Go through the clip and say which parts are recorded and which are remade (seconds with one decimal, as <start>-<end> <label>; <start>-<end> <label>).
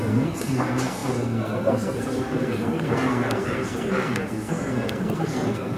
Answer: 0.0-5.8 remade